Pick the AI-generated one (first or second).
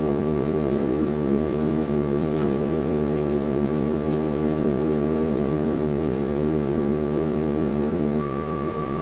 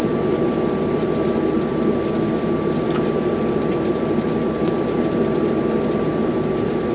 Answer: first